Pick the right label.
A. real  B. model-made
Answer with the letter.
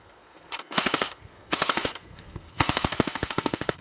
B